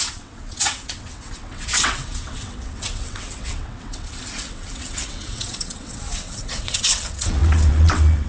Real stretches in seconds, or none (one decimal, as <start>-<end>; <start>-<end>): none